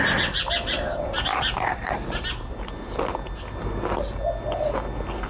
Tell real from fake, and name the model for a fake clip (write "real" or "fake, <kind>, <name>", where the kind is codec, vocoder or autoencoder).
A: real